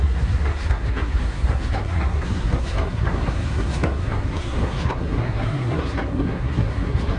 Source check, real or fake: fake